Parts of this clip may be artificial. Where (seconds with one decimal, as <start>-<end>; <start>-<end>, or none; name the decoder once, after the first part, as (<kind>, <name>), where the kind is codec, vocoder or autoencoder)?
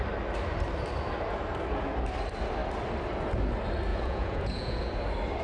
3.9-4.9 (vocoder, Vocos)